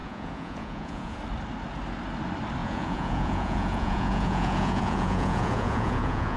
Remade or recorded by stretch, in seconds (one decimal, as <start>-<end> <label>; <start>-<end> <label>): 0.0-1.2 remade; 1.2-2.6 recorded; 2.6-6.4 remade